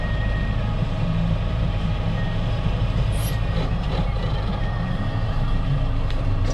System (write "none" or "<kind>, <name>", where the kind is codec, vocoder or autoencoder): vocoder, BigVGAN v2